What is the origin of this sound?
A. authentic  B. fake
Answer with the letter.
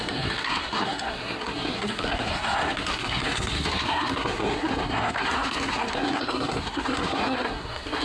B